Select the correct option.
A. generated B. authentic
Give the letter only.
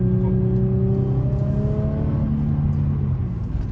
B